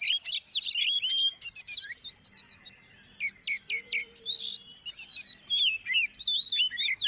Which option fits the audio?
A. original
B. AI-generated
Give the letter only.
A